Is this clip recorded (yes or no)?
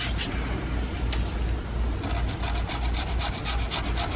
yes